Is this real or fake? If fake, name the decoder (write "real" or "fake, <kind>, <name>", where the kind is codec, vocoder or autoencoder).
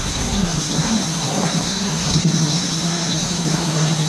fake, codec, SNAC